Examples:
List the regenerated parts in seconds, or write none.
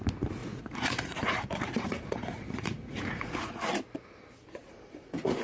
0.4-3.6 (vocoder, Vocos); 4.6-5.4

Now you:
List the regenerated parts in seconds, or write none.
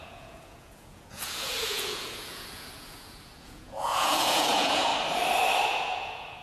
0.0-4.9 (vocoder, Vocos); 5.6-6.4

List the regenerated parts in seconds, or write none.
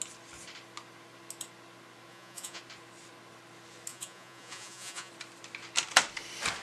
2.1-2.6 (vocoder, Vocos); 3.9-5.1